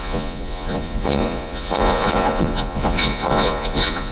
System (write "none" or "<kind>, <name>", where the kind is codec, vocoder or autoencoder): vocoder, Vocos